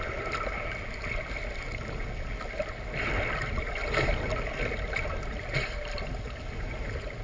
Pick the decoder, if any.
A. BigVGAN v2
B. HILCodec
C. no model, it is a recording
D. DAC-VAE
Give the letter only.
C